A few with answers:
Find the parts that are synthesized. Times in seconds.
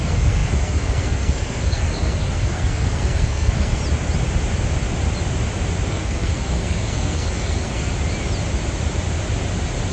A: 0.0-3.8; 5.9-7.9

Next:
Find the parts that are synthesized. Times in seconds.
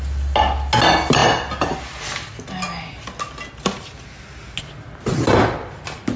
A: none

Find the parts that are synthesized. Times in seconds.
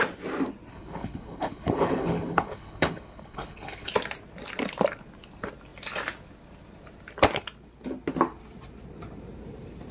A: 0.7-3.9